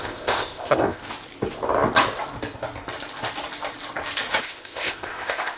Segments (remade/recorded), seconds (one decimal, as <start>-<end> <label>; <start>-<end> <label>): 0.0-1.0 remade; 1.0-4.4 recorded; 4.4-5.6 remade